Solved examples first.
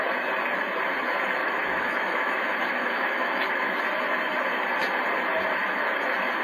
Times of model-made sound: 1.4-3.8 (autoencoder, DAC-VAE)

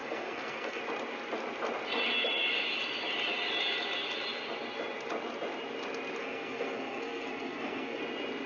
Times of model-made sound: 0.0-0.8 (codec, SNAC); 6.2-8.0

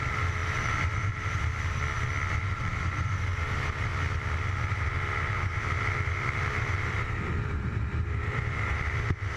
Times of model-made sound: 0.0-1.5 (vocoder, BigVGAN v2); 2.3-3.9; 4.7-9.4

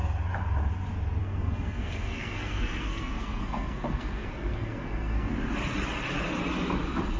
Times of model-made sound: 1.2-5.3 (codec, SNAC)